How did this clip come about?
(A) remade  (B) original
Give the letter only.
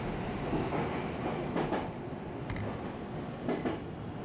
B